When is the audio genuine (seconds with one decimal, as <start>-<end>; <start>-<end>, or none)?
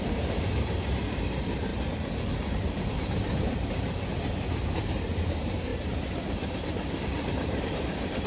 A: 1.7-2.9; 5.7-7.0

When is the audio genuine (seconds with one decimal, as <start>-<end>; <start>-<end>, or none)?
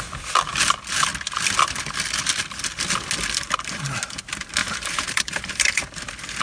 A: 0.0-4.6; 5.8-6.4